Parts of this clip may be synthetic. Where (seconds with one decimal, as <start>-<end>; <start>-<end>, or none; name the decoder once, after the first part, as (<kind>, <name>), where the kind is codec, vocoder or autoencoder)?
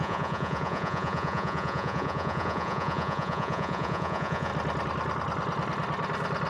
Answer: 0.0-4.5 (vocoder, Vocos)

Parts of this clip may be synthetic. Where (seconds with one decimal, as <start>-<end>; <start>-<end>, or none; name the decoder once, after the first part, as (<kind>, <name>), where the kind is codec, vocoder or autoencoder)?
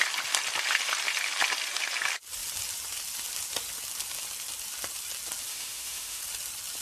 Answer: 5.5-6.2 (autoencoder, DAC-VAE)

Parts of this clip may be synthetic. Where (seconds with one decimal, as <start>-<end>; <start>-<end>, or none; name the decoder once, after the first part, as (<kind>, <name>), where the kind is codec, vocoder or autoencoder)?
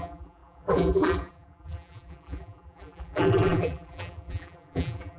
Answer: 0.0-5.2 (vocoder, BigVGAN v2)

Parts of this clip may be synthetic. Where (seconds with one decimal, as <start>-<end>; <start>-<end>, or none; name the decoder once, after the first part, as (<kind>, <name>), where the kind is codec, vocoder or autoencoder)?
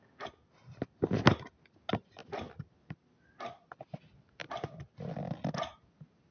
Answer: none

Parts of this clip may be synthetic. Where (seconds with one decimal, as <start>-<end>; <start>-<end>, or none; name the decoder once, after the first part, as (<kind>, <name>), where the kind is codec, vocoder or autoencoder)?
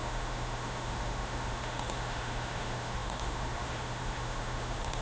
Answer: 0.0-5.0 (autoencoder, DAC-VAE)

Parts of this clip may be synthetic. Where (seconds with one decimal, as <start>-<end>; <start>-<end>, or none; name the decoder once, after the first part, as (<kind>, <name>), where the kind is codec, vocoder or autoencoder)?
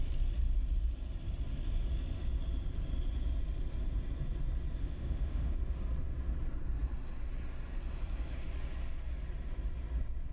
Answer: 4.8-5.6 (autoencoder, DAC-VAE)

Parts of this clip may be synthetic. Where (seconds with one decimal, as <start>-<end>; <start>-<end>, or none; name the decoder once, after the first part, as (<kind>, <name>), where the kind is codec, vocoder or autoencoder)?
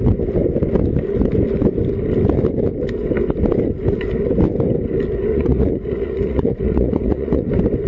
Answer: 5.3-7.5 (vocoder, Vocos)